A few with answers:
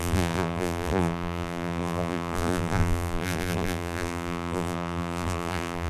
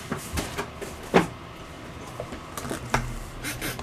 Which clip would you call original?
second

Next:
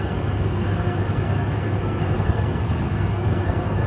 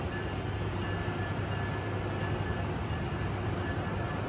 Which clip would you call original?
second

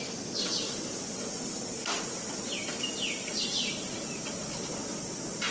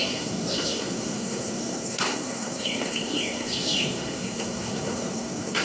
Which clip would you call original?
first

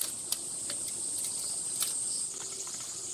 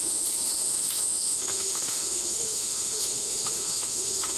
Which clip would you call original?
first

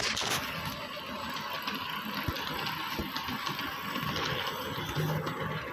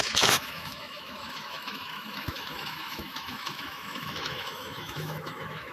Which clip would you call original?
first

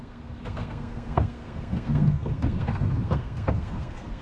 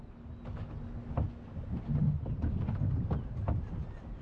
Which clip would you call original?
second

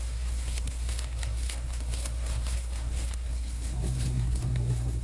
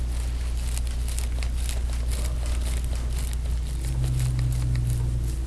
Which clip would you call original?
second